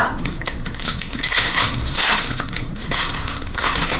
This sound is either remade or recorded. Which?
remade